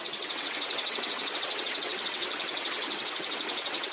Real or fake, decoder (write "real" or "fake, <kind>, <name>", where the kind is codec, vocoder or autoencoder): fake, vocoder, WaveNeXt